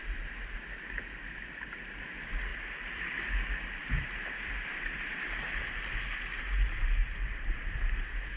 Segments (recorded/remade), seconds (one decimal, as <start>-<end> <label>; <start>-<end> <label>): 0.0-3.8 recorded; 3.8-4.9 remade; 4.9-8.4 recorded

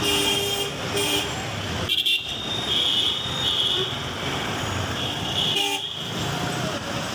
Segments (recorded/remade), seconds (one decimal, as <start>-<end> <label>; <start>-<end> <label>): 0.0-1.9 recorded; 1.9-6.2 remade; 6.2-7.1 recorded